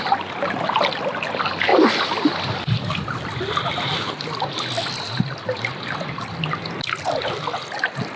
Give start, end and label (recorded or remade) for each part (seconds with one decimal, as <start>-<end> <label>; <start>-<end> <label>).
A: 0.0-8.2 recorded

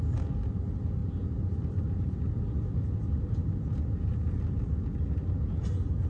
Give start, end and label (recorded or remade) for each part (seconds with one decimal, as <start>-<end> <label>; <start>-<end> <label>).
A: 0.0-1.0 recorded; 1.0-2.3 remade; 2.3-6.1 recorded

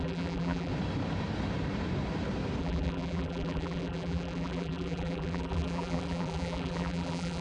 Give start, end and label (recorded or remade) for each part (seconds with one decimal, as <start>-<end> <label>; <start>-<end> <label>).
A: 0.0-0.7 remade; 0.7-2.6 recorded; 2.6-7.4 remade

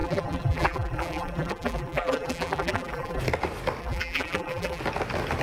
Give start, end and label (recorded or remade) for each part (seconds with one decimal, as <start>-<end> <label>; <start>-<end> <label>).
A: 0.0-3.2 remade; 3.2-3.8 recorded; 3.8-4.8 remade; 4.8-5.4 recorded

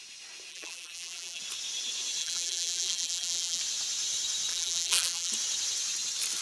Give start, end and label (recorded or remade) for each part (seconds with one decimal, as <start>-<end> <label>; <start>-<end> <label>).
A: 0.0-0.5 recorded; 0.5-1.4 remade; 1.4-2.2 recorded; 2.2-3.6 remade; 3.6-4.5 recorded; 4.5-5.3 remade; 5.3-6.4 recorded

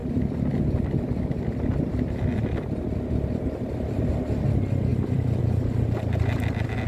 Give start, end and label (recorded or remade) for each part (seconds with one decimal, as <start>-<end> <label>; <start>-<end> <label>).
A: 0.0-4.1 remade; 4.1-4.9 recorded; 4.9-5.4 remade; 5.4-6.9 recorded